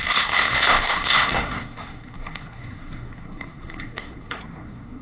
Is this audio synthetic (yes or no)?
yes